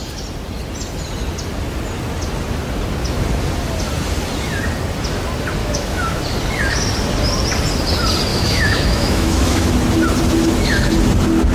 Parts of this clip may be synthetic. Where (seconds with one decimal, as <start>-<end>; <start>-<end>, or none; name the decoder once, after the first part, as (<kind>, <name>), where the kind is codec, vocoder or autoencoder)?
5.6-6.2 (autoencoder, DAC-VAE); 8.3-9.7